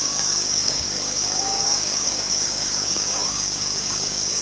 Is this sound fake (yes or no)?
yes